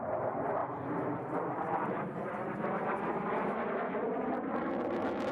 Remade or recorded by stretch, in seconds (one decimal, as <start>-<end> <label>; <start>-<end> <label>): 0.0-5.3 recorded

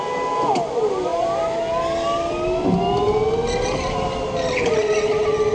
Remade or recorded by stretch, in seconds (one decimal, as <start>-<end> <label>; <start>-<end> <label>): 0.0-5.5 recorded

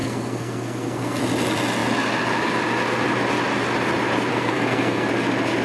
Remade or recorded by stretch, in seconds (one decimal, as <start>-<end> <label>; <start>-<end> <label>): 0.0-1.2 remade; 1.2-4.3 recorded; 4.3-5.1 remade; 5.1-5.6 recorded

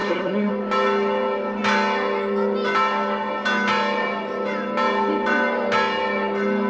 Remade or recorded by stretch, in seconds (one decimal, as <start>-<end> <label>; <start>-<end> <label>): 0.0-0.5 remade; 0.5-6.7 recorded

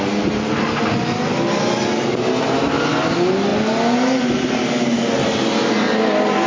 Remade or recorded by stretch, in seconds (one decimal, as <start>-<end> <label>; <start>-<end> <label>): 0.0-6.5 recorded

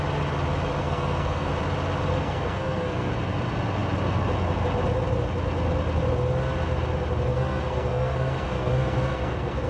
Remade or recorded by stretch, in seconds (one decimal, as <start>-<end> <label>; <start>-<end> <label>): 0.0-0.8 recorded; 0.8-1.5 remade; 1.5-2.1 recorded; 2.1-3.1 remade; 3.1-7.3 recorded; 7.3-9.7 remade